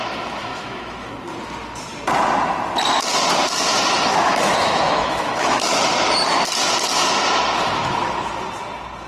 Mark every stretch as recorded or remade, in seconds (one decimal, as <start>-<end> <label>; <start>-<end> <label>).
0.0-0.4 recorded; 0.4-1.1 remade; 1.1-4.1 recorded; 4.1-5.8 remade; 5.8-9.1 recorded